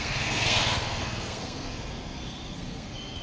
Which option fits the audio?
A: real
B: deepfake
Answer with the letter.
B